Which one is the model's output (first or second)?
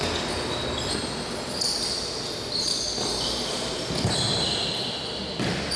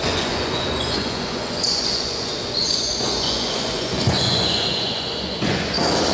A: second